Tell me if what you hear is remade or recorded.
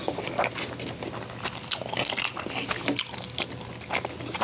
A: recorded